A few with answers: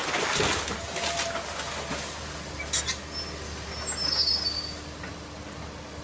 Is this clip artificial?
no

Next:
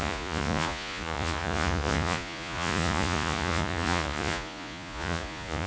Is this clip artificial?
yes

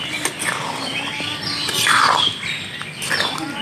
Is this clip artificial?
no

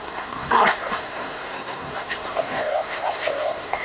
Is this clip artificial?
yes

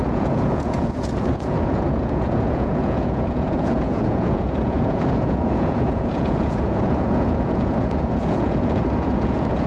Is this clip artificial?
yes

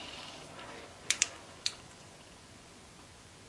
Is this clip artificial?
yes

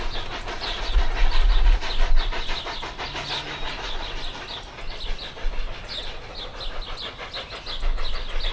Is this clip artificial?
no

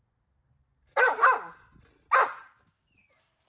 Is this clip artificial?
no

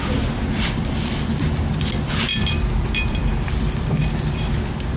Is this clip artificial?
yes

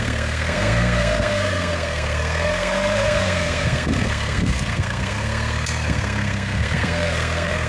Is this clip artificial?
yes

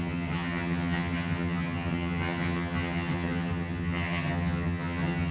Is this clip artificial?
yes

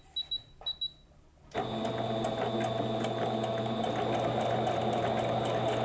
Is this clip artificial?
no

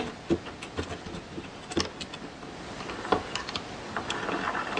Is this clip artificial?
no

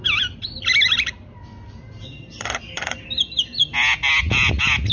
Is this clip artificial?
no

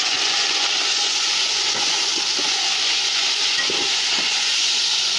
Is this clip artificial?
yes